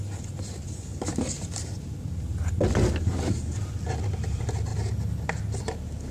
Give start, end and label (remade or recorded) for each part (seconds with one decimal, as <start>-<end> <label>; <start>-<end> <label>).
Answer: 0.0-6.1 recorded